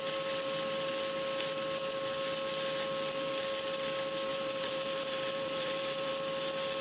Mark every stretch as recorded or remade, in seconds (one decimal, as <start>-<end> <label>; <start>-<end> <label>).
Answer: 0.0-4.3 recorded; 4.3-6.1 remade; 6.1-6.8 recorded